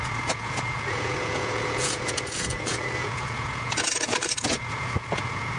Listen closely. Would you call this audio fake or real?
fake